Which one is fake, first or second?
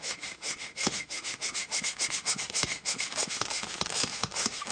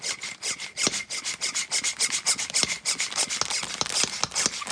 first